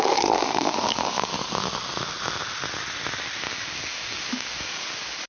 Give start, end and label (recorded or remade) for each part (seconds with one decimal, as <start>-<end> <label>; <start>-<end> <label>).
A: 0.0-1.3 remade; 1.3-3.4 recorded; 3.4-5.3 remade